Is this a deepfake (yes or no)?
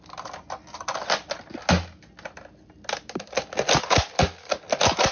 no